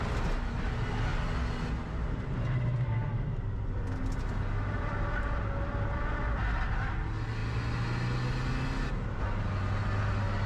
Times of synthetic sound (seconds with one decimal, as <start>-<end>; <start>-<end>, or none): none